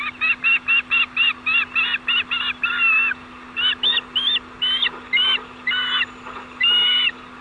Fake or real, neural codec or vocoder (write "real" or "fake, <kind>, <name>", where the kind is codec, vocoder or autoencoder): real